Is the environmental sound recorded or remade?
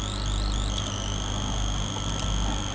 recorded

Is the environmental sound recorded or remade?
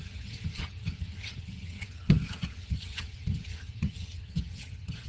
remade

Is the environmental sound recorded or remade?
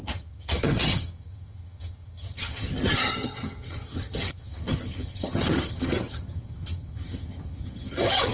remade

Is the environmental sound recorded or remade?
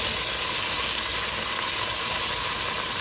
recorded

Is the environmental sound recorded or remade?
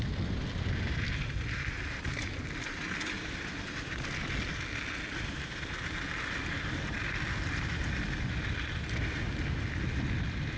recorded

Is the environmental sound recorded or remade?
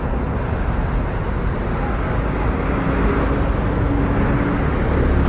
recorded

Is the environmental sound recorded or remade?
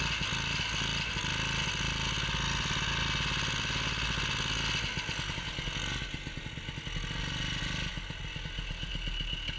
recorded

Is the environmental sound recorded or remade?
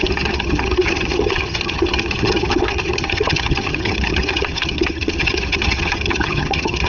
remade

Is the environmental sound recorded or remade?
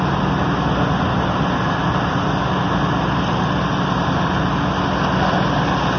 recorded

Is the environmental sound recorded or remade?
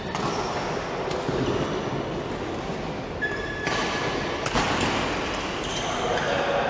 recorded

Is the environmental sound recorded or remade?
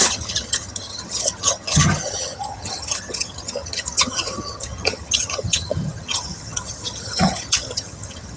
remade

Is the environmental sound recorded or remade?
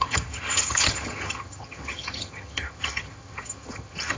remade